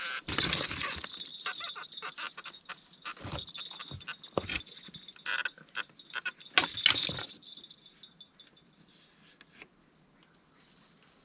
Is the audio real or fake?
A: real